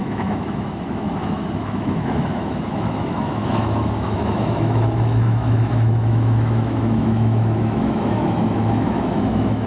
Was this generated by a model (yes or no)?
yes